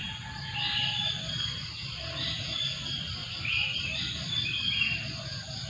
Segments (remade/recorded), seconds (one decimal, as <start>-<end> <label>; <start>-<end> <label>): 0.0-5.7 recorded